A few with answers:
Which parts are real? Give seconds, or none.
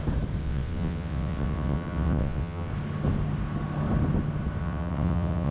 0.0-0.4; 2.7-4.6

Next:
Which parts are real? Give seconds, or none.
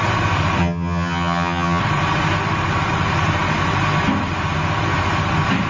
0.0-0.6; 1.8-5.7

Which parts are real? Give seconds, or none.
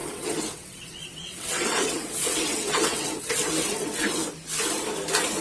4.2-5.4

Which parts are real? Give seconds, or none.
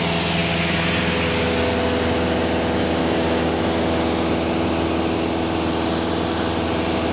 0.0-3.0; 3.6-7.1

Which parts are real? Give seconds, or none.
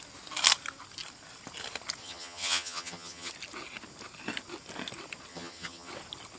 0.0-2.0; 3.3-5.3; 5.9-6.4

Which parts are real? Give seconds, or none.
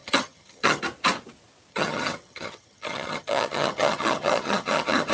0.8-1.7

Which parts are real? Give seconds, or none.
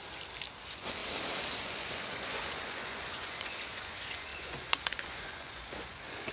0.0-0.6; 1.0-1.6